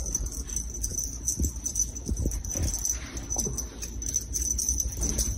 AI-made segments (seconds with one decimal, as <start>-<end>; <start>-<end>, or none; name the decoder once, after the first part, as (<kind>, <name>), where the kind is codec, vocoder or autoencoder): none